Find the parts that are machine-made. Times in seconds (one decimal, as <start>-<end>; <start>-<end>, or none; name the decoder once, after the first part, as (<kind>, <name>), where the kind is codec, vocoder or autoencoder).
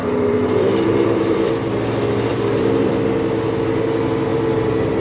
0.0-3.0 (vocoder, BigVGAN v2); 4.3-5.0